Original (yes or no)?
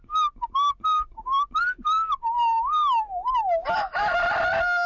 yes